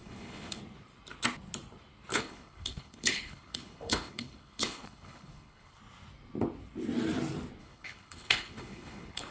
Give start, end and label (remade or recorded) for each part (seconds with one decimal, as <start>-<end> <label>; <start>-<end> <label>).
0.0-0.6 remade; 0.6-2.1 recorded; 2.1-5.8 remade; 5.8-7.6 recorded; 7.6-9.3 remade